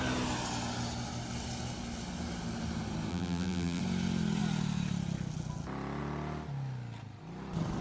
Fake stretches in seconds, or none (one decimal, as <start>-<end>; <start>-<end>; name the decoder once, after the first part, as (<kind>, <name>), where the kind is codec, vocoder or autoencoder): 3.1-3.8 (vocoder, BigVGAN v2)